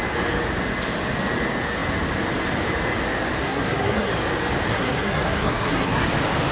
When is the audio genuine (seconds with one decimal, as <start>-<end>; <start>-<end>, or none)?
0.0-3.4; 4.1-4.7; 6.1-6.5